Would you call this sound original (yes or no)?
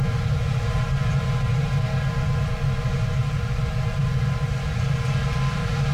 yes